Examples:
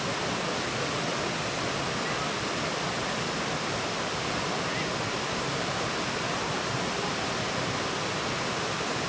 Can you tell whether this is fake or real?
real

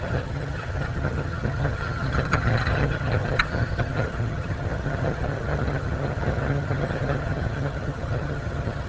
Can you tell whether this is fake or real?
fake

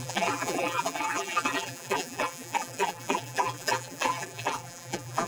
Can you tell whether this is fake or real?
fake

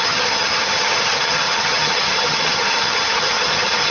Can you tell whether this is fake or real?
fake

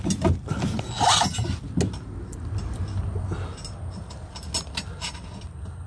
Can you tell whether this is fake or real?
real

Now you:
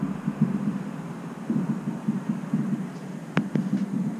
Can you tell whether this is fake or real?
real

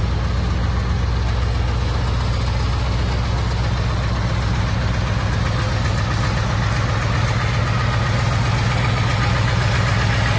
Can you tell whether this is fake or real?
real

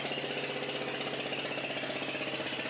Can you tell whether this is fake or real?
real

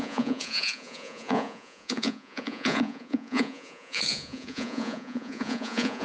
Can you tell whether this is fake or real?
fake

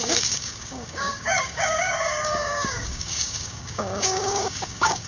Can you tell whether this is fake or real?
fake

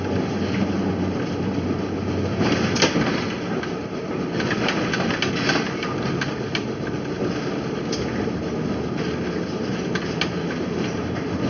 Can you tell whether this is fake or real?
real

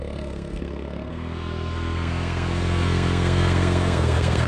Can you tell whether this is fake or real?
fake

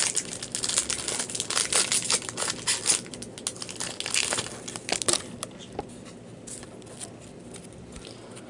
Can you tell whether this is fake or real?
real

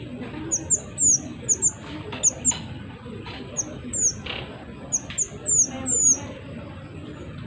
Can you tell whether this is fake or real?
real